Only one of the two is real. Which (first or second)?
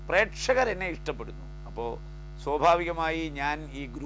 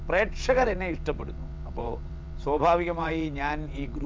first